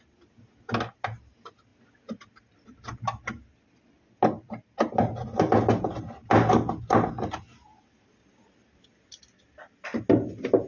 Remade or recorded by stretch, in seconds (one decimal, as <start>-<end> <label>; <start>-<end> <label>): 0.0-10.7 recorded